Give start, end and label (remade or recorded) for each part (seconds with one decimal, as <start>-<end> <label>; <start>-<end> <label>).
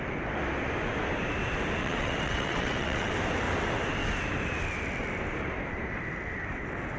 0.0-1.8 recorded; 1.8-3.1 remade; 3.1-7.0 recorded